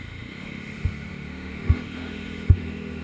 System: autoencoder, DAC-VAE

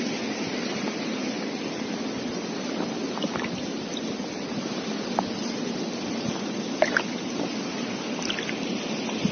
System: none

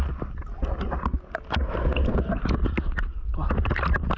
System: none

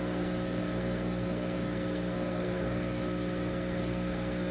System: codec, SNAC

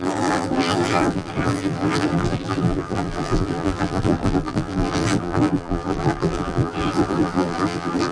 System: vocoder, BigVGAN v2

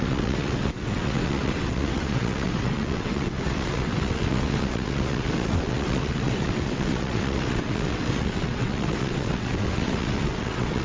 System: vocoder, WaveNeXt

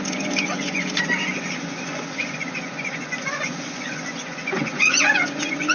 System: vocoder, Vocos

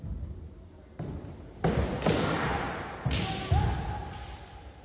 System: none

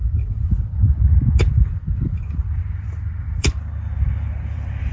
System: vocoder, BigVGAN v2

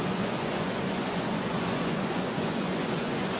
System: vocoder, Vocos